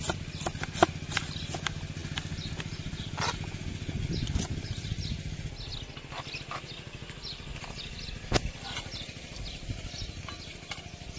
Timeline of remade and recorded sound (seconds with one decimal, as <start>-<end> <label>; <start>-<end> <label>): 0.0-11.2 recorded